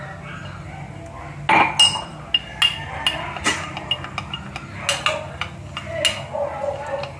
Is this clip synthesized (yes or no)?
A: no